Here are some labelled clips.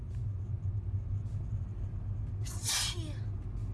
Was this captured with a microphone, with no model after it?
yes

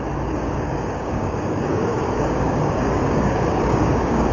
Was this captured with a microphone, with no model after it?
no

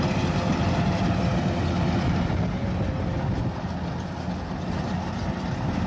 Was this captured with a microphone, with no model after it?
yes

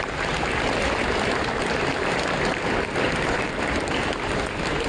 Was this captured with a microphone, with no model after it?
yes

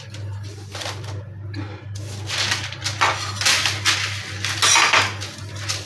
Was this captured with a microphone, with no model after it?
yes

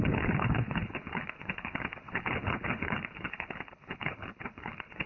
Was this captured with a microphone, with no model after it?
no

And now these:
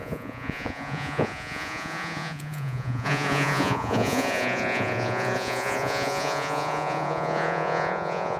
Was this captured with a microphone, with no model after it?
no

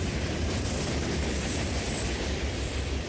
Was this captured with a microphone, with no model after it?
no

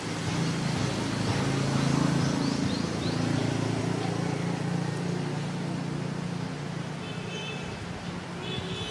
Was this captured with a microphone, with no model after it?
yes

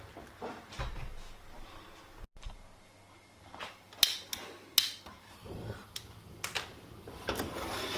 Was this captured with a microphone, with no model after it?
yes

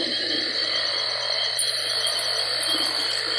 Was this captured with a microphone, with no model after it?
yes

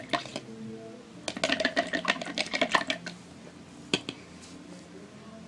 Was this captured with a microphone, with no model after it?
yes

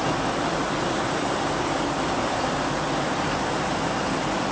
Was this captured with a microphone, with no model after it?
no